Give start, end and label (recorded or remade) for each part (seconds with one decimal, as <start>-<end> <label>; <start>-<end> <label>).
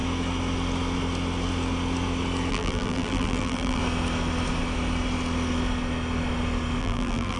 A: 0.0-2.5 recorded; 2.5-3.8 remade; 3.8-6.8 recorded; 6.8-7.4 remade